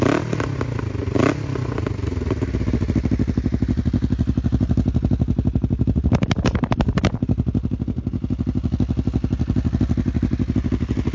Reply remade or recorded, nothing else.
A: recorded